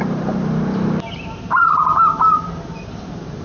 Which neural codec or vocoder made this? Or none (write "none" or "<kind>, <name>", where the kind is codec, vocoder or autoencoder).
vocoder, BigVGAN v2